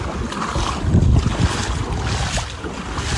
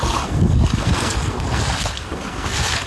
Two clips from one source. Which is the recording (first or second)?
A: first